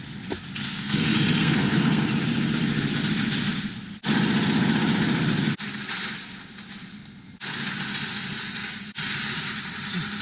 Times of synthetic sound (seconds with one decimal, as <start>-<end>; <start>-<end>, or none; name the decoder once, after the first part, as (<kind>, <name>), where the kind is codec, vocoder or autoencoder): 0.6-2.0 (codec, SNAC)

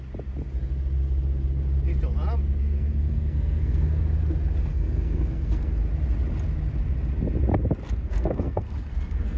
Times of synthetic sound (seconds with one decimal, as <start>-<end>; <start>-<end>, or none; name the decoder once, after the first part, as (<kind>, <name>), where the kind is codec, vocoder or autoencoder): 2.6-4.0 (codec, SNAC); 4.6-5.8; 8.0-9.4

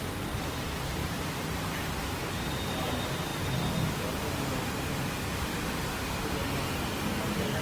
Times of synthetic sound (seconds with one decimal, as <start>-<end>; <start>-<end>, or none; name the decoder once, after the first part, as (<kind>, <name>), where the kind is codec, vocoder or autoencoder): none

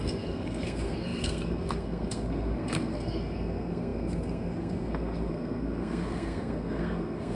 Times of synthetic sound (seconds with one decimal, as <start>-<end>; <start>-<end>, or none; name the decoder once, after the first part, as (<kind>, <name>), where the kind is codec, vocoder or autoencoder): 0.0-7.3 (codec, SNAC)

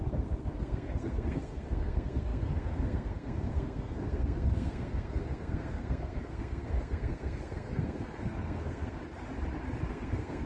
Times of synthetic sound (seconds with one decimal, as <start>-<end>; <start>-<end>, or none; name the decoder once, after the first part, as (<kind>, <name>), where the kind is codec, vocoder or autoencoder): 0.0-9.0 (codec, SNAC); 9.9-10.5

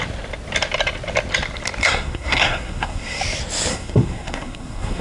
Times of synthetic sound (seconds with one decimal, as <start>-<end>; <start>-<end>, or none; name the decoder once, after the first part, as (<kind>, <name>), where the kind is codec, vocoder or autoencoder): 1.8-3.2 (codec, SNAC); 3.7-5.0

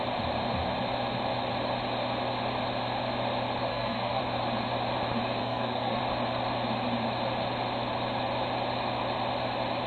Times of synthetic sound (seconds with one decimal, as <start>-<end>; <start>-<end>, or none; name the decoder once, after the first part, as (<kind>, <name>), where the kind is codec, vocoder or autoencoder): 3.7-4.2 (codec, SNAC); 5.4-6.0